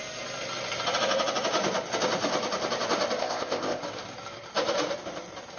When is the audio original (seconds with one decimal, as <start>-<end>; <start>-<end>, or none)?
0.0-3.2; 3.8-5.6